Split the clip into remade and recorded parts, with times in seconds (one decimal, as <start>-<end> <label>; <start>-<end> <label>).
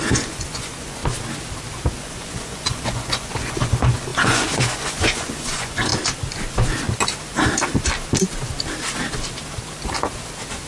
0.0-1.0 remade; 1.0-2.0 recorded; 2.0-5.9 remade; 5.9-10.7 recorded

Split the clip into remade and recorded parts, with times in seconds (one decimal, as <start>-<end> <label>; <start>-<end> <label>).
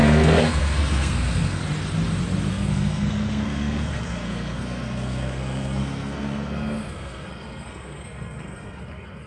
0.0-1.6 remade; 1.6-2.5 recorded; 2.5-9.3 remade